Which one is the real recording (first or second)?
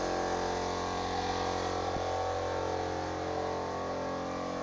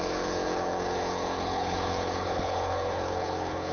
first